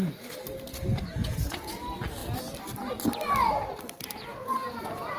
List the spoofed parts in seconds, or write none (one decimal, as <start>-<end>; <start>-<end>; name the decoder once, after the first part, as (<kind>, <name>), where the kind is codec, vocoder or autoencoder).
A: 1.2-1.7 (vocoder, Vocos); 4.3-5.2